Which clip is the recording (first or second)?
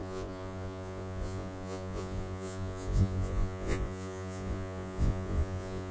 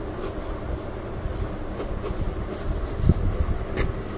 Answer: second